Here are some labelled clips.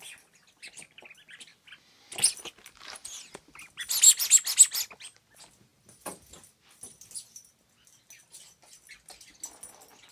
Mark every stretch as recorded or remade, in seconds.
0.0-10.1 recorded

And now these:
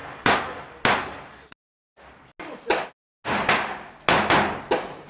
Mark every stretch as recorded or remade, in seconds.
0.0-5.1 recorded

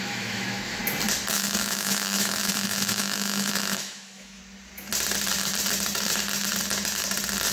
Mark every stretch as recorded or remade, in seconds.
0.0-0.8 remade; 0.8-1.3 recorded; 1.3-4.4 remade; 4.4-7.5 recorded

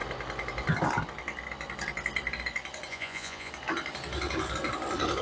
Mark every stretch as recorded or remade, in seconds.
0.0-2.9 recorded; 2.9-3.5 remade; 3.5-5.2 recorded

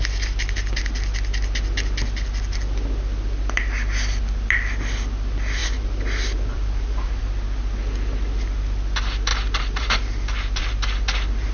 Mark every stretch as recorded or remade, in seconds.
0.0-5.6 recorded; 5.6-7.2 remade; 7.2-9.3 recorded; 9.3-11.5 remade